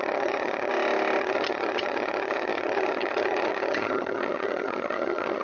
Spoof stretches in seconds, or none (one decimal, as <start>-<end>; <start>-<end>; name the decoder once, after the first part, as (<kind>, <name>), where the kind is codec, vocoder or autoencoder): 0.0-0.7 (vocoder, HiFi-GAN); 1.2-5.4